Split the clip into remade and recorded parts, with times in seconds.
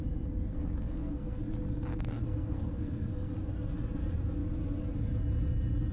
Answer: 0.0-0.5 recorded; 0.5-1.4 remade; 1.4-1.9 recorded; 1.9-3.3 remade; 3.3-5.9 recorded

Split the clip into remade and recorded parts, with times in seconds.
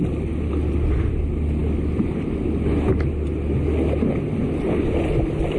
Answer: 0.0-5.6 recorded